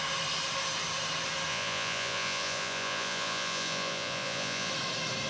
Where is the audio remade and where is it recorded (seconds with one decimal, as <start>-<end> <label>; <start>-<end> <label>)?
0.0-1.5 recorded; 1.5-4.7 remade; 4.7-5.3 recorded

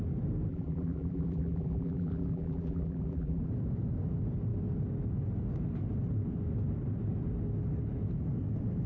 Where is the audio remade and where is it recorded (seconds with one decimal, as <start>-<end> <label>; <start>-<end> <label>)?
0.0-0.5 recorded; 0.5-3.4 remade; 3.4-8.9 recorded